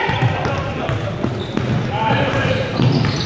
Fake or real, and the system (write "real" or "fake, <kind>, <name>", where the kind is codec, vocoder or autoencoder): real